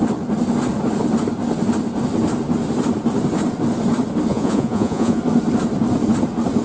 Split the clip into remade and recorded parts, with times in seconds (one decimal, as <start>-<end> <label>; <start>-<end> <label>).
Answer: 0.0-4.3 recorded; 4.3-5.2 remade; 5.2-6.6 recorded